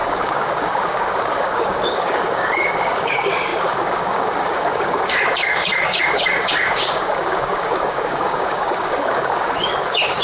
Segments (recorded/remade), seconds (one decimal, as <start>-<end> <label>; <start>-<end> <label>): 0.0-10.2 remade

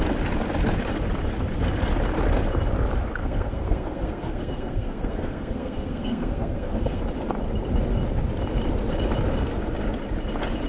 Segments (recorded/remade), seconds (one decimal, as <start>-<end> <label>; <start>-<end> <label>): 0.0-3.2 recorded; 3.2-7.0 remade; 7.0-10.7 recorded

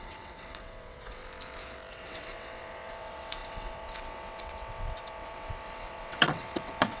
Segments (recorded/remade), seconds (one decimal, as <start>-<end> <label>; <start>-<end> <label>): 0.0-1.2 remade; 1.2-1.9 recorded; 1.9-7.0 remade

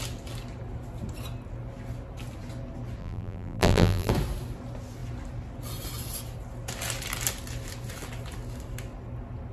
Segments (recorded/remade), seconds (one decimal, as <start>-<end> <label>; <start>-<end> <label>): 0.0-3.0 recorded; 3.0-4.1 remade; 4.1-9.5 recorded

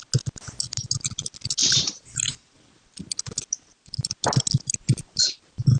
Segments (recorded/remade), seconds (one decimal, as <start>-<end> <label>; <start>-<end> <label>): 0.0-5.8 recorded

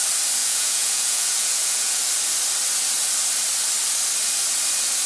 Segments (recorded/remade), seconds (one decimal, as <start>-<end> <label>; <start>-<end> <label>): 0.0-0.4 recorded; 0.4-2.0 remade; 2.0-5.1 recorded

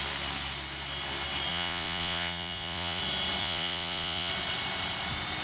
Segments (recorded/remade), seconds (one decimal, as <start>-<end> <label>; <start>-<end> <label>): 0.0-1.5 recorded; 1.5-3.0 remade; 3.0-3.4 recorded; 3.4-4.3 remade; 4.3-5.4 recorded

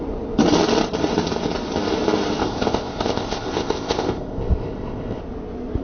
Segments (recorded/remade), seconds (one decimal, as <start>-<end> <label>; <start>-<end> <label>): 0.0-2.4 recorded; 2.4-5.2 remade; 5.2-5.8 recorded